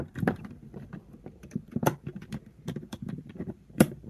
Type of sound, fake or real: fake